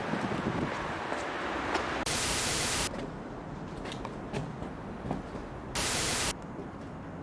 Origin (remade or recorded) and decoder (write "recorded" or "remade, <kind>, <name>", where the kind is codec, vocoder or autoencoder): recorded